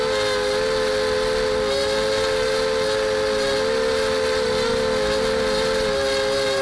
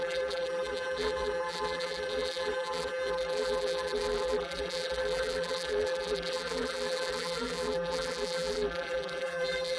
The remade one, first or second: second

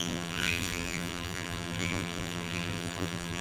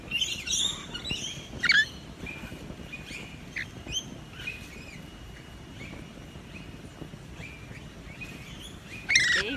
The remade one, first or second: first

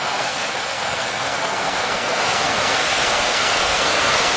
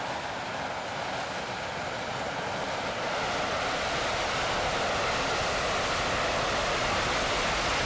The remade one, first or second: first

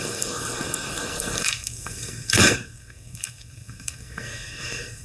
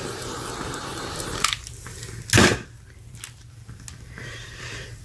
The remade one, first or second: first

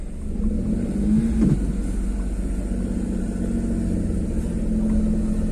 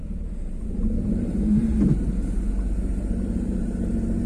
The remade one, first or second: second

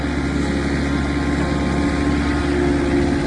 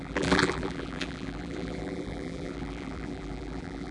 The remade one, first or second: second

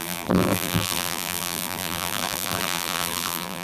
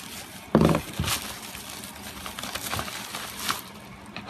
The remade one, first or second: first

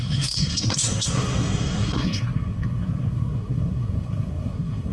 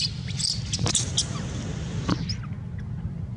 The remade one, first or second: first